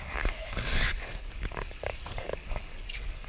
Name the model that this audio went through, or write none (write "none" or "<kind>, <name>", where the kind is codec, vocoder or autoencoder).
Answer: codec, DAC